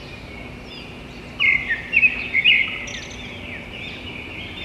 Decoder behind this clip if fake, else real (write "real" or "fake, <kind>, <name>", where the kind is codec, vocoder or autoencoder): real